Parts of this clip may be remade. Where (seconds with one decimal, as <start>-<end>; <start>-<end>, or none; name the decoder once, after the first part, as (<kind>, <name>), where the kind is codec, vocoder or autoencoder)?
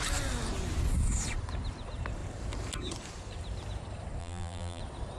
4.2-4.8 (vocoder, BigVGAN v2)